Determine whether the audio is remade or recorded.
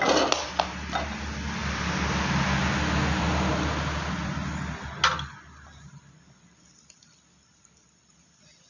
recorded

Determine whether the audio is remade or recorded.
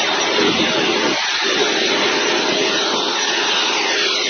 remade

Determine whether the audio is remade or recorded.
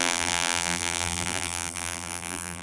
remade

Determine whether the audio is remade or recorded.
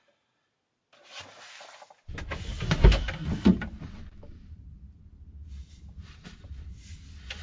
recorded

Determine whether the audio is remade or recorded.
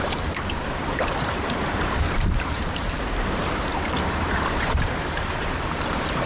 remade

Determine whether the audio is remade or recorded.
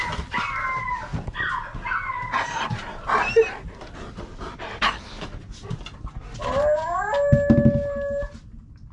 recorded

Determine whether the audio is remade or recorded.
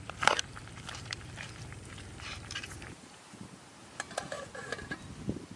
remade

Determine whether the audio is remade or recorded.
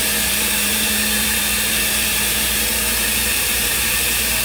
remade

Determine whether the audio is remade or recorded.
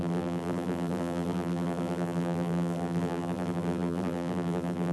remade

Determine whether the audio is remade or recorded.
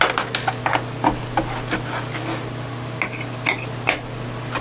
recorded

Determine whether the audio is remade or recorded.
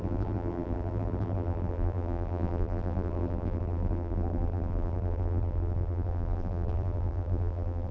remade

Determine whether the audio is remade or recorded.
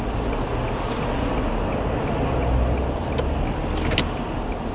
recorded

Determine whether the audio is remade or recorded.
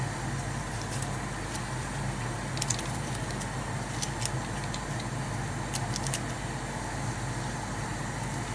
recorded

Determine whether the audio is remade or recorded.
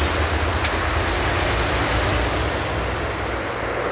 recorded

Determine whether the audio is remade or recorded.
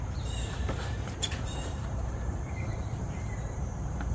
remade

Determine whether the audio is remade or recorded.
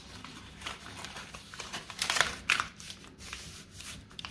remade